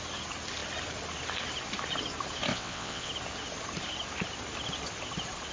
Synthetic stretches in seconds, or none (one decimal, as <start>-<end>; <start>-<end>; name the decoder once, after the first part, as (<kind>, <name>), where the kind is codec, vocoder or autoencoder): 2.5-3.1 (vocoder, WaveNeXt)